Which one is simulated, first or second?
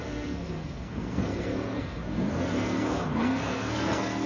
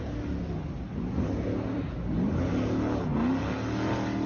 first